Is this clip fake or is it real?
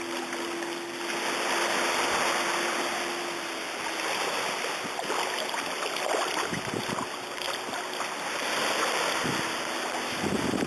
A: real